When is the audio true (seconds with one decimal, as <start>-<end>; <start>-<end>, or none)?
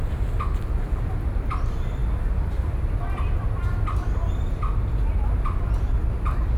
0.0-6.6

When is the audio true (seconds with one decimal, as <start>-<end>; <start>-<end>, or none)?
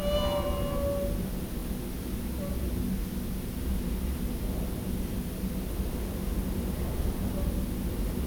0.0-8.3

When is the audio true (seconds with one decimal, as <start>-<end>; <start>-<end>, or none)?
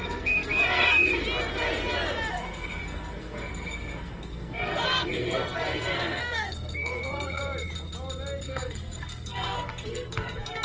1.1-2.3; 7.4-8.4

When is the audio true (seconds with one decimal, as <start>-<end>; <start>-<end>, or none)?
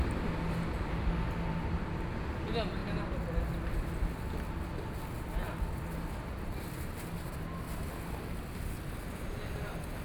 0.0-10.0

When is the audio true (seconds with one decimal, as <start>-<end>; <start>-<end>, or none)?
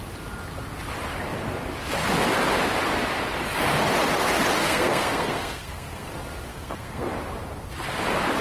0.0-4.6; 6.1-6.5; 7.1-8.4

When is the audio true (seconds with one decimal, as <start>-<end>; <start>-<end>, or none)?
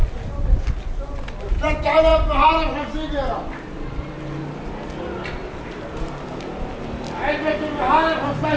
0.0-8.6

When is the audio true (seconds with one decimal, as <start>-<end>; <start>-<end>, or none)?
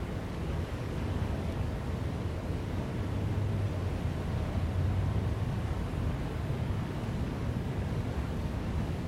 2.9-5.4